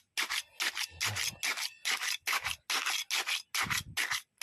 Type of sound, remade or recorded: recorded